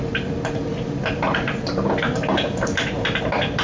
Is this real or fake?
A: real